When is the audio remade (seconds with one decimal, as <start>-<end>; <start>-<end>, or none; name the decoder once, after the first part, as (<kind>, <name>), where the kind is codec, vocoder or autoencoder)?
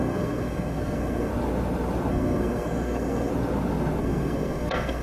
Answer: 0.0-1.3 (codec, SNAC); 2.1-3.3; 4.0-5.0